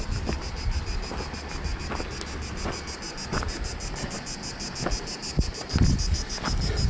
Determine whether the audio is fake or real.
real